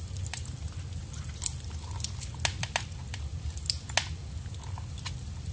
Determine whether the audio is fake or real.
real